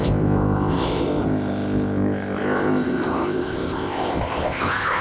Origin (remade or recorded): remade